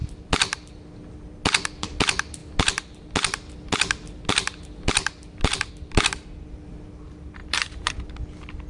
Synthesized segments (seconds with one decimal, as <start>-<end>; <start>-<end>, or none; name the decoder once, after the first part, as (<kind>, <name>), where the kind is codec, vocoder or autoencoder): 7.4-8.0 (vocoder, BigVGAN v2)